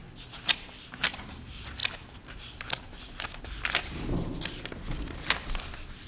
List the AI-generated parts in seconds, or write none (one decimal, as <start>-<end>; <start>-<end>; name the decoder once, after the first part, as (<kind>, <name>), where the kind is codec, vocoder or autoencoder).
none